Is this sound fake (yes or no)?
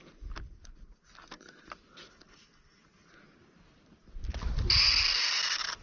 no